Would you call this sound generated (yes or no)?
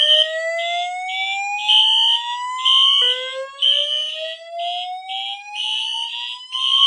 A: no